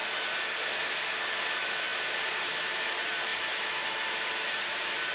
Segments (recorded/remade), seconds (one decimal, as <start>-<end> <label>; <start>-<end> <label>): 0.0-1.5 recorded; 1.5-5.1 remade